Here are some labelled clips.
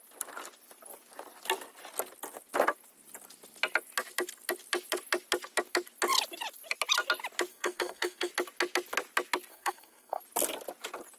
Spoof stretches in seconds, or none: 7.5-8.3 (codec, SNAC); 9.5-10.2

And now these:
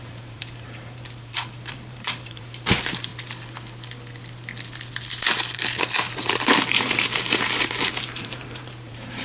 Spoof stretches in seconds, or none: 0.0-3.1 (vocoder, BigVGAN v2); 6.1-9.2

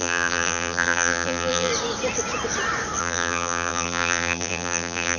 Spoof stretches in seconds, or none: 0.0-1.7 (vocoder, BigVGAN v2); 3.0-5.2